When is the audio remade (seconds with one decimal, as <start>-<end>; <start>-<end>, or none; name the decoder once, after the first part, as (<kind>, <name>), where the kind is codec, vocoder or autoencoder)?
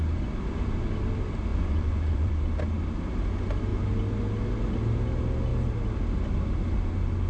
1.5-2.3 (vocoder, Vocos)